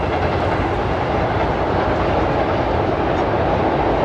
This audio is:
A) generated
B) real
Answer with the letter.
B